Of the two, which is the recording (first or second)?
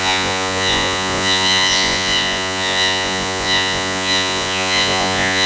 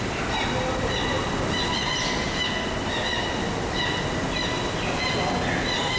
second